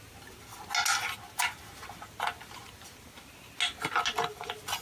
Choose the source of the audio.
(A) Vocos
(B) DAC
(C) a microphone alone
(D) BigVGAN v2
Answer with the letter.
C